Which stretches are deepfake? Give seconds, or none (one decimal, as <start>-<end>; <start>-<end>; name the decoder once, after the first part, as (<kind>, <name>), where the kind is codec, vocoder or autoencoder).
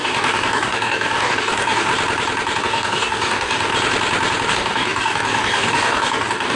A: 0.0-1.9 (codec, DAC); 2.6-3.7; 4.5-6.6